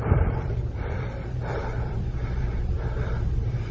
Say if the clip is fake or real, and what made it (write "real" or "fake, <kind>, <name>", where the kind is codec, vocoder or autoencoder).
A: fake, vocoder, BigVGAN v2